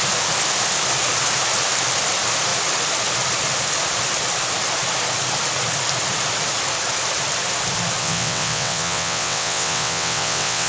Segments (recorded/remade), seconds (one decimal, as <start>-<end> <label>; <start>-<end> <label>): 0.0-8.0 recorded; 8.0-10.7 remade

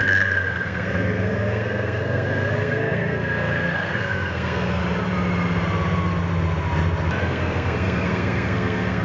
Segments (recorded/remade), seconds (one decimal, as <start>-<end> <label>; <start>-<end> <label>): 0.0-4.8 remade; 4.8-7.2 recorded; 7.2-9.0 remade

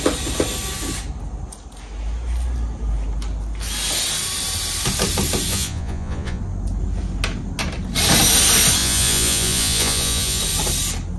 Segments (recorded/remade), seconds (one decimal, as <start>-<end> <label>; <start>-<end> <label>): 0.0-5.5 recorded; 5.5-6.4 remade; 6.4-8.8 recorded; 8.8-10.4 remade; 10.4-11.2 recorded

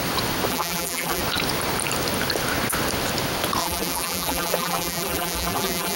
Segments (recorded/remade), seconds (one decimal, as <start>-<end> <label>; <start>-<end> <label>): 0.0-0.5 recorded; 0.5-1.2 remade; 1.2-3.6 recorded; 3.6-6.0 remade